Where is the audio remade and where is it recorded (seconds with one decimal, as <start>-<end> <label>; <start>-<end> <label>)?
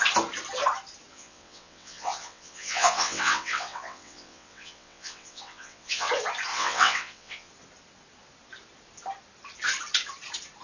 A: 0.0-1.1 recorded; 1.1-6.1 remade; 6.1-6.5 recorded; 6.5-7.5 remade; 7.5-10.6 recorded